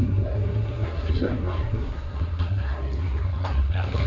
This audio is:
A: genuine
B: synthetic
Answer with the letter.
B